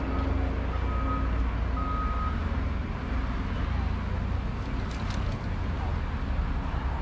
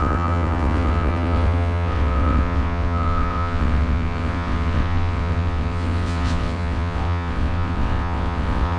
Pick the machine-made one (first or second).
second